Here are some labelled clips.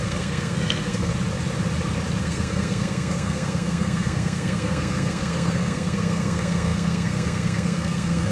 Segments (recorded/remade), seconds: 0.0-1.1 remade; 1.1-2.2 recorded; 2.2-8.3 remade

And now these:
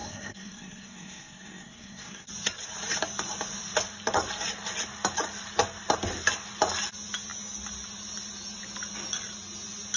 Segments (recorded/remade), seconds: 0.0-2.3 remade; 2.3-10.0 recorded

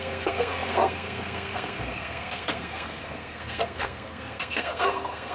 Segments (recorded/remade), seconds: 0.0-5.3 remade